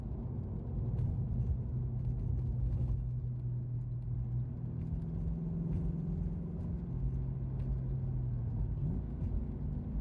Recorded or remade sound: recorded